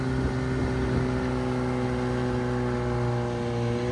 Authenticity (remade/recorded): recorded